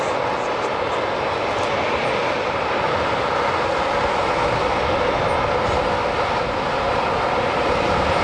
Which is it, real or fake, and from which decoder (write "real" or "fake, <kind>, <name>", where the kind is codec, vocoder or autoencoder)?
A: real